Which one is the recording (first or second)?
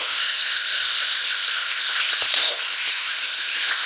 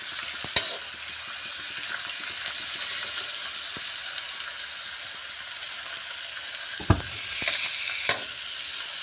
second